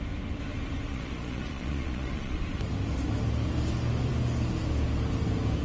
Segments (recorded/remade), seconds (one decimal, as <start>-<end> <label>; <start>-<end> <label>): 0.0-0.9 recorded; 0.9-2.4 remade; 2.4-5.6 recorded